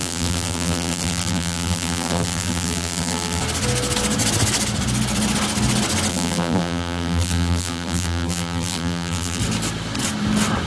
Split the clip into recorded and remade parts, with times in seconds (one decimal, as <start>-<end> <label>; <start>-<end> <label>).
0.0-3.4 remade; 3.4-6.1 recorded; 6.1-9.4 remade; 9.4-10.7 recorded